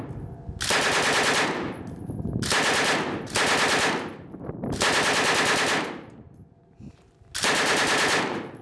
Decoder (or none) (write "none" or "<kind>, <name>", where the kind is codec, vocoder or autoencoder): none